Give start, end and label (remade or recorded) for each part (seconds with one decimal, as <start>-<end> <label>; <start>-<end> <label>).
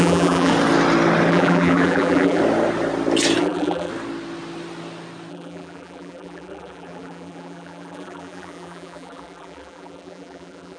0.0-0.5 remade; 0.5-1.3 recorded; 1.3-2.4 remade; 2.4-3.4 recorded; 3.4-3.9 remade; 3.9-5.3 recorded; 5.3-10.8 remade